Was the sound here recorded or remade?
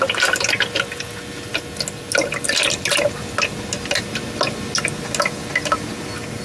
recorded